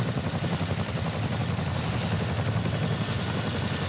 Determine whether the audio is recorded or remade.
recorded